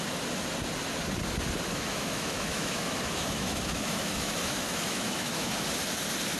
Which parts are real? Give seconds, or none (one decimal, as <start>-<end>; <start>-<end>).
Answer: 0.0-1.7; 5.5-6.4

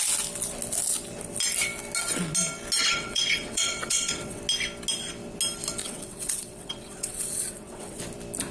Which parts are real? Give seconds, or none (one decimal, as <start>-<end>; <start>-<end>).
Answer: 0.0-2.8; 4.4-5.8; 8.0-8.5